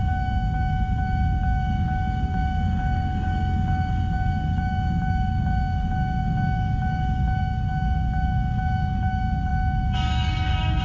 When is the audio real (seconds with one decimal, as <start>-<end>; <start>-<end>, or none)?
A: none